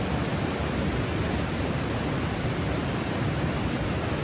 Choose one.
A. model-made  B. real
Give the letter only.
B